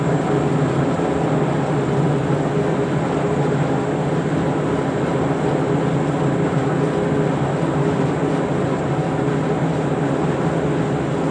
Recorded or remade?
recorded